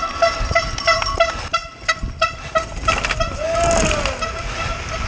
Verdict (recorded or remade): recorded